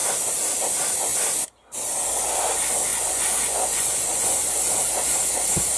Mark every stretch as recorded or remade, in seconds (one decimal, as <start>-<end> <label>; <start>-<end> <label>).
0.0-2.9 recorded; 2.9-4.6 remade; 4.6-5.8 recorded